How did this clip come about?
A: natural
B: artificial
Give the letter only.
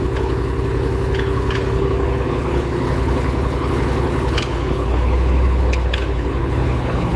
B